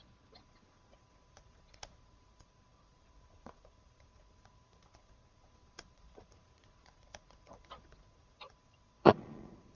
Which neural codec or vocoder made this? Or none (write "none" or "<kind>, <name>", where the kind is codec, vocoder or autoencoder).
vocoder, Vocos